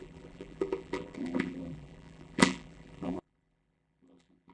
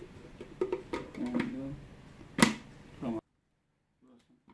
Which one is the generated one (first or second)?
first